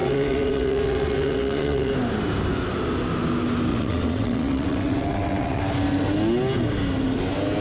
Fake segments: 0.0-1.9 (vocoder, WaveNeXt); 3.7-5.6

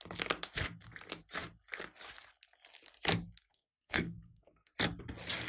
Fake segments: 3.5-4.7 (codec, SNAC)

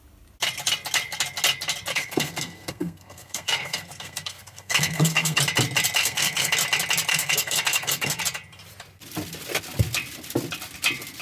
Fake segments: 1.9-5.4 (codec, SNAC); 6.0-6.5; 7.1-8.2

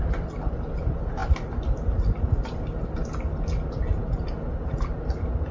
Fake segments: none

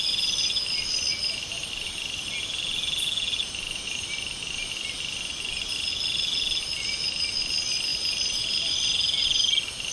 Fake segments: none

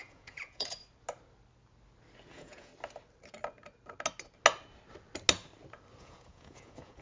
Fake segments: 0.0-0.8 (vocoder, Vocos); 2.3-2.7; 6.0-7.0